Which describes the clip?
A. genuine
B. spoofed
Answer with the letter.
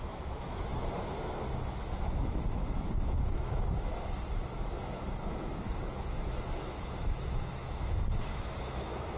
B